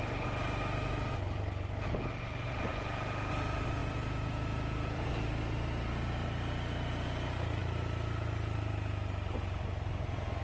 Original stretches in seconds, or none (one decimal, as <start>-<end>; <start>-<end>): 0.0-2.7; 3.3-3.8; 5.1-10.4